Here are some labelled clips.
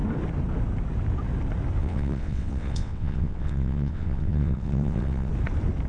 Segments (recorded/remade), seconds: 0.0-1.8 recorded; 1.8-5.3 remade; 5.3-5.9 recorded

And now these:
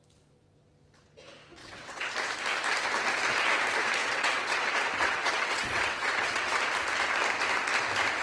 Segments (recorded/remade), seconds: 0.0-1.6 recorded; 1.6-2.1 remade; 2.1-4.0 recorded; 4.0-6.6 remade; 6.6-8.2 recorded

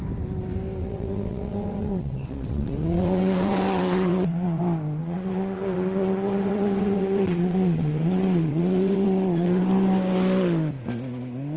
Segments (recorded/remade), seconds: 0.0-0.8 recorded; 0.8-4.6 remade; 4.6-5.0 recorded; 5.0-9.6 remade; 9.6-11.6 recorded

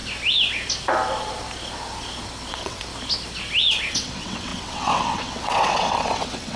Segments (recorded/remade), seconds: 0.0-2.5 recorded; 2.5-2.9 remade; 2.9-3.9 recorded; 3.9-6.6 remade

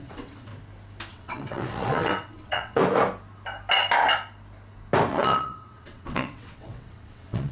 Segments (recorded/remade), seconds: 0.0-0.5 remade; 0.5-1.1 recorded; 1.1-2.8 remade; 2.8-5.1 recorded; 5.1-7.5 remade